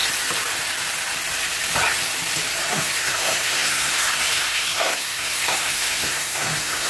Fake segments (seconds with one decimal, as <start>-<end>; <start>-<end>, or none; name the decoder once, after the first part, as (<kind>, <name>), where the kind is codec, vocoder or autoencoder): 2.7-6.9 (codec, SNAC)